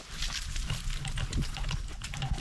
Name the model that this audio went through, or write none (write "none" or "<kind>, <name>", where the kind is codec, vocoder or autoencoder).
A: none